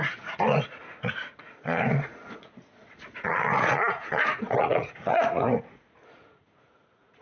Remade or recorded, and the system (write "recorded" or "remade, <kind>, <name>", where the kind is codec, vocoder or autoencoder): remade, vocoder, Vocos